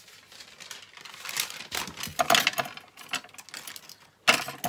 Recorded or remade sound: recorded